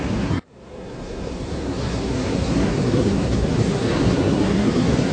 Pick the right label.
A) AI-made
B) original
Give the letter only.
A